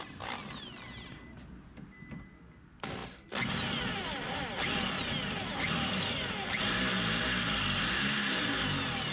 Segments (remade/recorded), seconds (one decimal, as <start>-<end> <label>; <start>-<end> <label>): 0.0-9.1 recorded